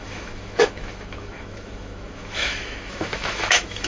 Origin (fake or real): fake